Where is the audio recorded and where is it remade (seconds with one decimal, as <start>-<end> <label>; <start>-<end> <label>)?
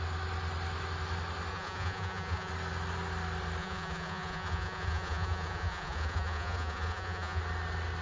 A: 0.0-1.5 recorded; 1.5-2.5 remade; 2.5-3.6 recorded; 3.6-7.4 remade; 7.4-8.0 recorded